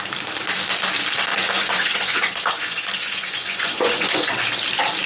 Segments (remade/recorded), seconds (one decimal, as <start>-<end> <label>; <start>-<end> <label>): 0.0-1.3 recorded; 1.3-4.4 remade; 4.4-5.1 recorded